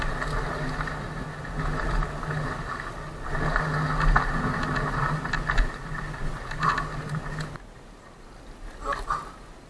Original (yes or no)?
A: yes